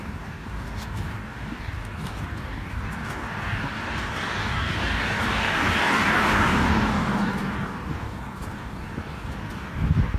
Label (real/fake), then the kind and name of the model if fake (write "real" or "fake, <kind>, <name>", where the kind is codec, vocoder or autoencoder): fake, codec, DAC